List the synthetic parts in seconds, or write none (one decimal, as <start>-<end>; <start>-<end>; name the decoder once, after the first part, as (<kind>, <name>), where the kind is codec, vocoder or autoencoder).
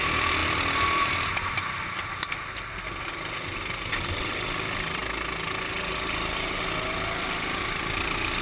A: none